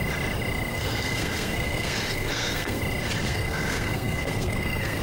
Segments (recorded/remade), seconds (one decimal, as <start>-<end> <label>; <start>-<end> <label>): 0.0-0.7 recorded; 0.7-2.8 remade; 2.8-3.3 recorded; 3.3-5.0 remade